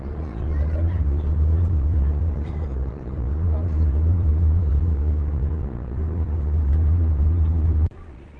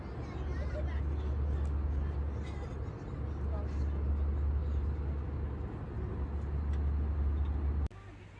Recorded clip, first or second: second